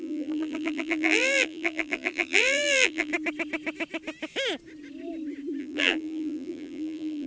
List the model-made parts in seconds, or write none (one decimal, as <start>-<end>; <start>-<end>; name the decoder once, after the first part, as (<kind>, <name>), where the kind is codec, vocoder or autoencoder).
0.0-3.1 (vocoder, BigVGAN v2); 5.6-7.3